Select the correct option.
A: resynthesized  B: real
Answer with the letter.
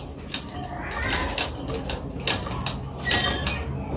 B